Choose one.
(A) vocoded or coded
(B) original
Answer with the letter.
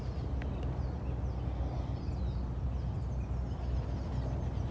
B